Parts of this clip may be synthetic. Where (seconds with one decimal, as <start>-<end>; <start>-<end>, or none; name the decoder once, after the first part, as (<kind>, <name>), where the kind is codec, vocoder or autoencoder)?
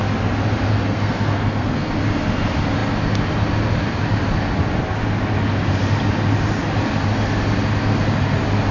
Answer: 0.7-1.9 (codec, SNAC)